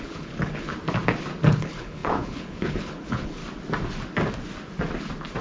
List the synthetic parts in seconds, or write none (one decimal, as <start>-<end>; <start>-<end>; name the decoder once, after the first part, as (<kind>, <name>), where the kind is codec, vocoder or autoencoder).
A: 0.0-0.7 (codec, HILCodec); 1.5-3.4